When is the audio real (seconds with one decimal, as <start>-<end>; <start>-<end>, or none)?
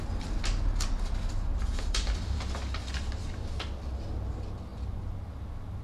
0.0-1.7; 2.9-5.8